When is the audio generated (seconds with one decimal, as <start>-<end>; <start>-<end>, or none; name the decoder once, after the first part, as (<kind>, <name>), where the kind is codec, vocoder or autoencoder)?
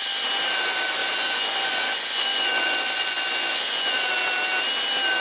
1.0-4.1 (vocoder, Vocos)